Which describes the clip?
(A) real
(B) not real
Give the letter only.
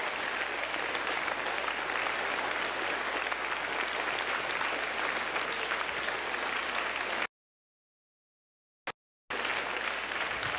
A